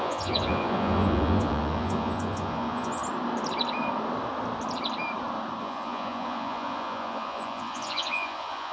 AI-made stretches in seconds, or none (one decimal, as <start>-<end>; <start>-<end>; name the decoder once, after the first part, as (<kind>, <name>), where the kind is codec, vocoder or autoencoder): 0.0-3.0 (vocoder, Vocos); 5.6-8.7